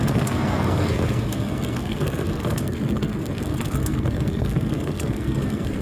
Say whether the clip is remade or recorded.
remade